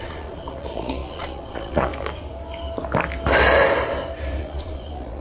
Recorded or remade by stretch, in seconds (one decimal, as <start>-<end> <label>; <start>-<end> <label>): 0.0-1.9 remade; 1.9-4.4 recorded; 4.4-5.2 remade